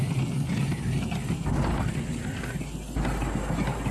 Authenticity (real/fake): real